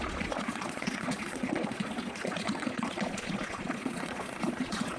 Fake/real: fake